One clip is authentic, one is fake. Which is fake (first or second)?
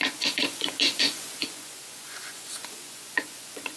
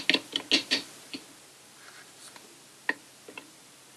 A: first